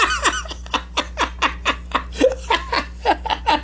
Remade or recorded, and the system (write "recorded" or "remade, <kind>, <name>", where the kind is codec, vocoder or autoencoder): recorded